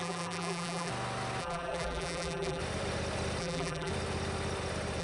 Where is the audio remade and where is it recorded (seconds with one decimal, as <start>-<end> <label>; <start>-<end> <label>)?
0.0-0.9 remade; 0.9-1.4 recorded; 1.4-2.6 remade; 2.6-3.4 recorded; 3.4-3.9 remade; 3.9-5.0 recorded